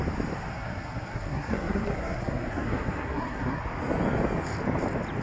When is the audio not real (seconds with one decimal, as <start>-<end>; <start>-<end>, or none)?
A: 0.5-3.6

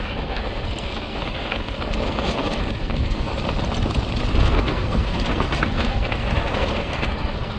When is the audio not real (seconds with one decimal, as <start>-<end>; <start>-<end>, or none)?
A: 0.0-3.3; 4.4-7.6

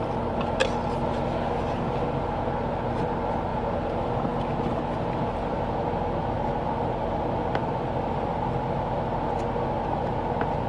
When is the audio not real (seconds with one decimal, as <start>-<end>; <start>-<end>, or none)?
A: none

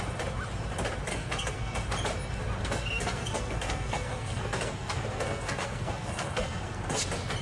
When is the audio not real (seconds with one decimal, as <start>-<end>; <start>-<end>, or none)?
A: 1.1-1.8; 2.6-7.0